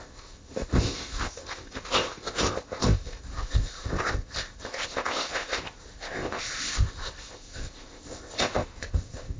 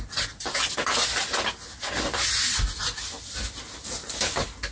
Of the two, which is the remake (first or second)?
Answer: first